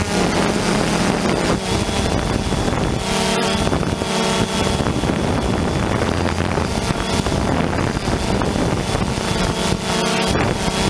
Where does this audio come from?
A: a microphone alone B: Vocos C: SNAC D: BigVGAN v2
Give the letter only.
A